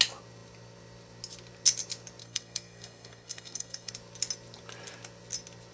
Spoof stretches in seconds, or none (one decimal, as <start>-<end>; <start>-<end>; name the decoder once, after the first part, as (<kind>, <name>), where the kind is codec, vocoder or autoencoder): 2.2-3.9 (codec, SNAC)